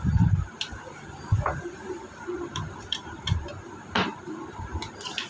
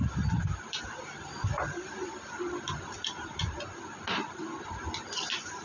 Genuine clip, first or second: second